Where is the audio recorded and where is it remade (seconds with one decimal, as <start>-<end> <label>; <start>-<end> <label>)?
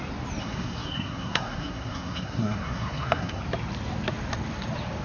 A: 0.0-0.4 recorded; 0.4-3.4 remade; 3.4-5.0 recorded